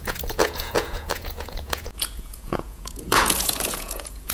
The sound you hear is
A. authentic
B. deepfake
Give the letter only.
B